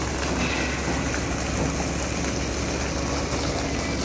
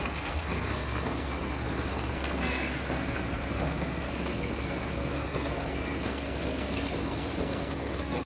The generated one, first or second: second